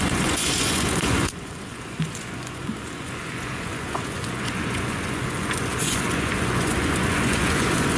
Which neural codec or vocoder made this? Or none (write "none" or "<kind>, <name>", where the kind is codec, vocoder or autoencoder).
vocoder, Vocos